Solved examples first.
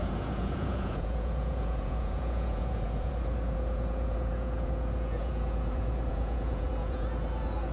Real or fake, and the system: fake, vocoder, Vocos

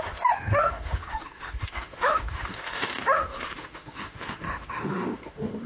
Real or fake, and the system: fake, autoencoder, DAC-VAE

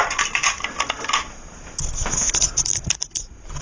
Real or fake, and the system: real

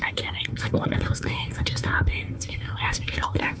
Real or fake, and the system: fake, codec, SNAC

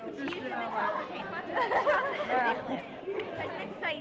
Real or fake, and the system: real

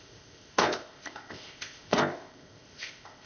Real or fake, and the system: fake, codec, ZipCodec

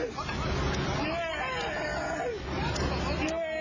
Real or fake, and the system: real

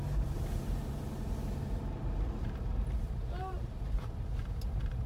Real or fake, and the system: fake, vocoder, BigVGAN v2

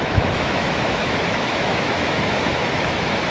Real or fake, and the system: fake, autoencoder, DAC-VAE